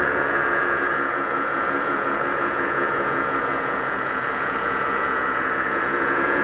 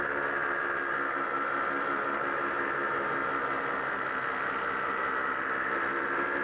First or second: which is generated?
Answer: first